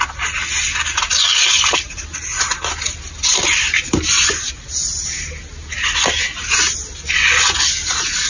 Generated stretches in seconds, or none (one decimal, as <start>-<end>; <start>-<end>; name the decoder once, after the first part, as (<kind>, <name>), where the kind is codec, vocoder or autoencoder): none